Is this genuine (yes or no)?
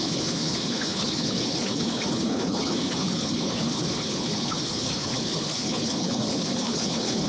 no